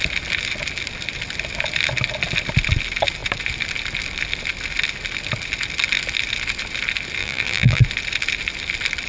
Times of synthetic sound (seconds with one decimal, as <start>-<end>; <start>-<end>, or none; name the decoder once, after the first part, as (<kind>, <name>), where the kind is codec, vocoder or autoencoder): 7.2-7.8 (vocoder, BigVGAN v2)